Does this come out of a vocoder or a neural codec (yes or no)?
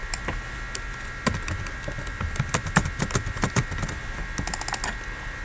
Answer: no